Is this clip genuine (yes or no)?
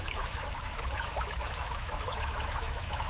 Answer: no